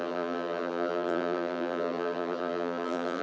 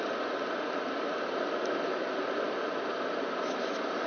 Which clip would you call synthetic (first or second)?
first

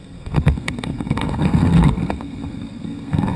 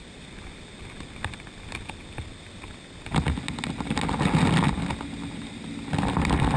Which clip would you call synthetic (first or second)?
first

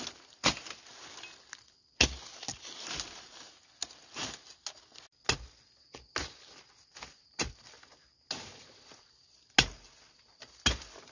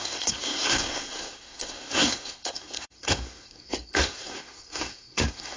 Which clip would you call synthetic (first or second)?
second